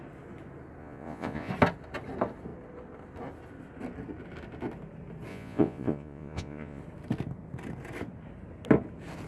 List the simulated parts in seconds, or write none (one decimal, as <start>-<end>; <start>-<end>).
0.8-1.5; 5.3-6.8